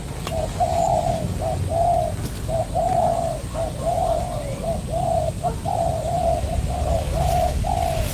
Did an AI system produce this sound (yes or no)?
no